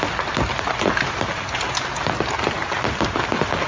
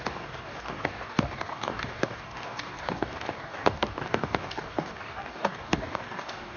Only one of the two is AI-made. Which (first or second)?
second